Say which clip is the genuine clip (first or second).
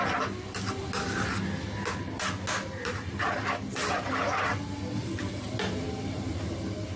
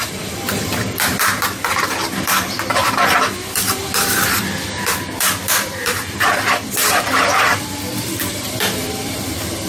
first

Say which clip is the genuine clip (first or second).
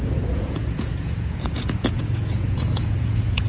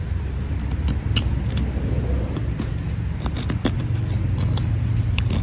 second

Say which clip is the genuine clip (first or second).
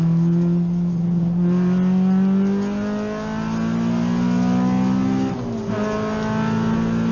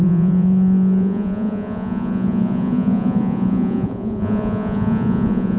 first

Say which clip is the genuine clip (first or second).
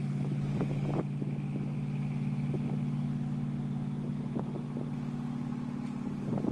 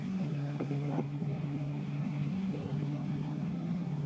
first